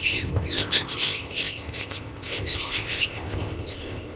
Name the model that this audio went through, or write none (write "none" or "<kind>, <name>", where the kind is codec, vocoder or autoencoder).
codec, ZipCodec